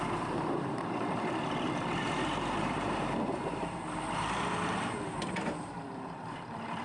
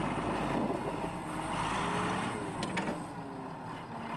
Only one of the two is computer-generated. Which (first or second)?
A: first